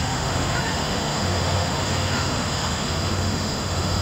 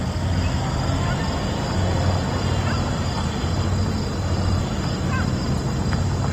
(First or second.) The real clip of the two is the second